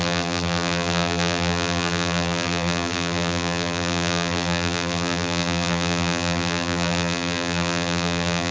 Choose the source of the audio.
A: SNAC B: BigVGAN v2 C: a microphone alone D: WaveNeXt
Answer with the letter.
B